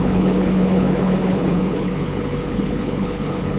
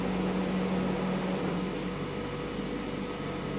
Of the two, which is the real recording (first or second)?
second